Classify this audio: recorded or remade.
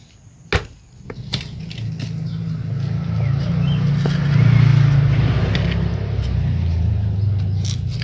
recorded